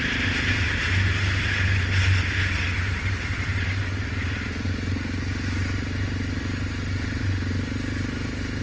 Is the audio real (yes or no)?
yes